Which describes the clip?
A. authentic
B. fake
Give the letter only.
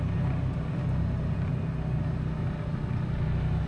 A